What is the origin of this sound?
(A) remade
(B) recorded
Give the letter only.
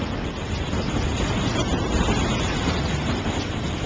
B